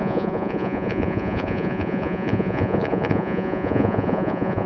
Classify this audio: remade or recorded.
remade